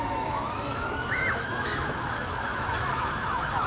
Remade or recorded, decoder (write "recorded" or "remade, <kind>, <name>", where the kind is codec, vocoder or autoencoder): remade, autoencoder, DAC-VAE